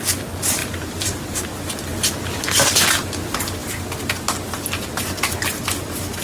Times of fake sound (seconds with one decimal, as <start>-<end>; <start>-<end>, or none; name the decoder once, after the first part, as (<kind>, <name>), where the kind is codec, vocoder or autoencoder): 0.6-1.4 (vocoder, BigVGAN v2)